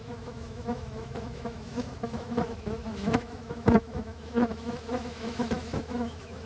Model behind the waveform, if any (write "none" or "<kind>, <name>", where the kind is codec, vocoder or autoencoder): autoencoder, DAC-VAE